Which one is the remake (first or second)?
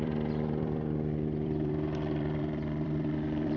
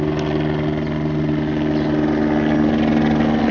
first